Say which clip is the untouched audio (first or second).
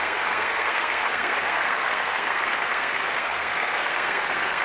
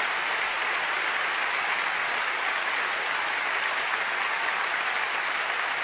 second